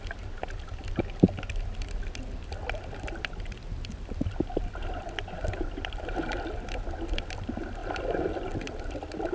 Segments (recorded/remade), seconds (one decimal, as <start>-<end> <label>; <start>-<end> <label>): 0.0-9.3 recorded